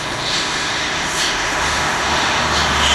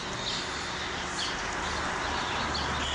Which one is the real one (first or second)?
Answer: second